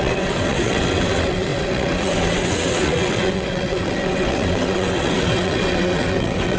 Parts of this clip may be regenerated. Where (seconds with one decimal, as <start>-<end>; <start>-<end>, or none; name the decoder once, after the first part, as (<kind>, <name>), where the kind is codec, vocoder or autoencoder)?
0.0-6.6 (vocoder, WaveNeXt)